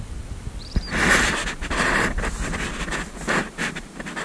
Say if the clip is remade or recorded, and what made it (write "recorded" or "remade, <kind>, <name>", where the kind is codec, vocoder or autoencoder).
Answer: recorded